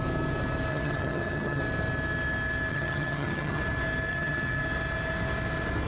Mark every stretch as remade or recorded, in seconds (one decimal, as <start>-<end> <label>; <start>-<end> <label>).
0.0-0.7 recorded; 0.7-1.6 remade; 1.6-2.7 recorded; 2.7-3.6 remade; 3.6-4.1 recorded; 4.1-4.6 remade; 4.6-5.9 recorded